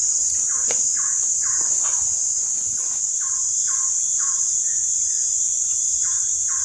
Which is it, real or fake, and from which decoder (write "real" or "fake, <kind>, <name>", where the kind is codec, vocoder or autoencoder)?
fake, vocoder, BigVGAN v2